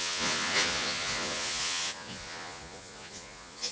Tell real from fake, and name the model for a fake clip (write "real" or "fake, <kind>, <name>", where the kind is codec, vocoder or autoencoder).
fake, vocoder, Vocos